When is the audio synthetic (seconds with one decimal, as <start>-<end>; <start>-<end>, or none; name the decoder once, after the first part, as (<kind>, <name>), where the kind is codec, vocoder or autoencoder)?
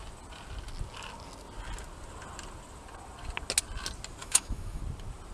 4.2-4.8 (autoencoder, DAC-VAE)